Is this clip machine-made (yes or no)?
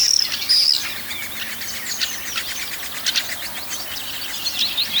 no